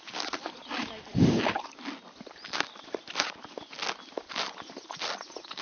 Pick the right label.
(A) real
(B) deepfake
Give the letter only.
A